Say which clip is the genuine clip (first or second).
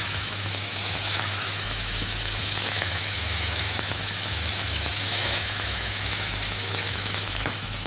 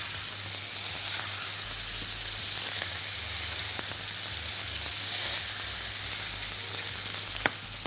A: second